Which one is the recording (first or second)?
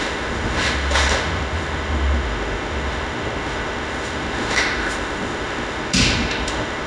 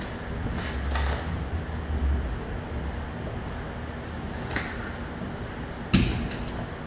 second